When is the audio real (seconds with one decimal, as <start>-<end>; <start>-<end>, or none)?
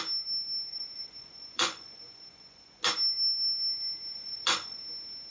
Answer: 0.0-0.7; 2.8-4.1; 4.8-5.3